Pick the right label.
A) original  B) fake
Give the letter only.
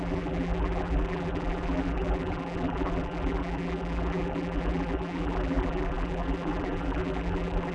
B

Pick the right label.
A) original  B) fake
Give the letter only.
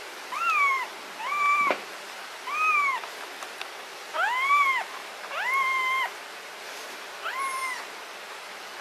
A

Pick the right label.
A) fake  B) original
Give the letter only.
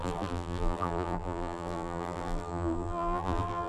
A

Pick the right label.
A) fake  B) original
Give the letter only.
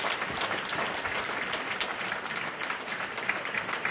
A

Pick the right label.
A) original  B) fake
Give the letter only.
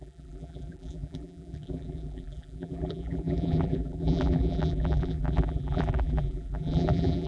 B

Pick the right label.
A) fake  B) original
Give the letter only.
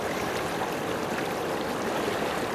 A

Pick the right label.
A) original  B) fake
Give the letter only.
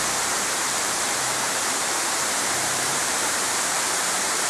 B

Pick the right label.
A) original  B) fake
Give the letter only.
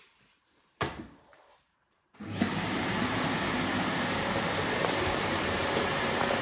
B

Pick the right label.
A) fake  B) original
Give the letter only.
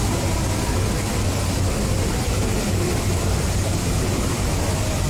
B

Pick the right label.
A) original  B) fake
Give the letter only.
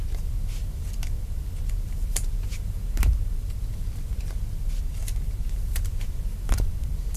B